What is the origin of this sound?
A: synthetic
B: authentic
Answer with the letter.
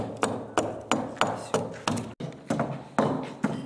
B